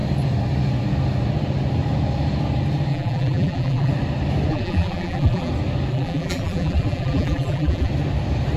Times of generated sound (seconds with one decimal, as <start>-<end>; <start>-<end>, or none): 2.9-3.9; 4.5-5.5; 5.9-7.9